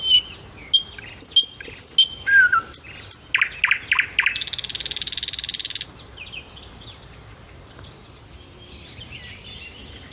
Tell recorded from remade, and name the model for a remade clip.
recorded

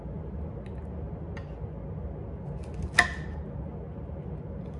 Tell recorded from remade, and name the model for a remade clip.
recorded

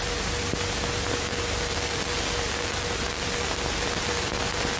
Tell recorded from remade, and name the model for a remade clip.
recorded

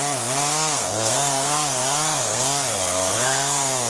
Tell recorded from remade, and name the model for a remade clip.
remade, codec, SNAC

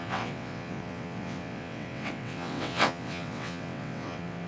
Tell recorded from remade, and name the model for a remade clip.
remade, vocoder, WaveNeXt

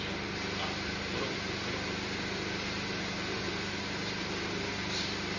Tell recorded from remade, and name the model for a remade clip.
recorded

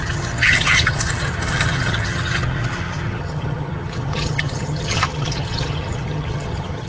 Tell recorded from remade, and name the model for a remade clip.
remade, vocoder, HiFi-GAN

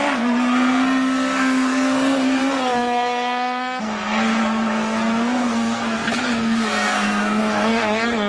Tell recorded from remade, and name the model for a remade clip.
remade, codec, SNAC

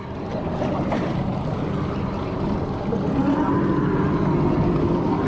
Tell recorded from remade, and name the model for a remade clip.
recorded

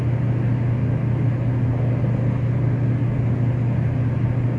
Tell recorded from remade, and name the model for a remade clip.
recorded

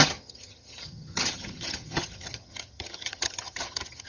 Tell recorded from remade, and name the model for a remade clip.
remade, vocoder, HiFi-GAN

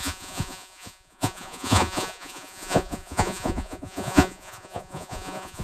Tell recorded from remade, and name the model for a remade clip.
remade, vocoder, Vocos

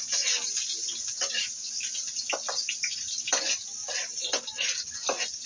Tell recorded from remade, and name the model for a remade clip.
recorded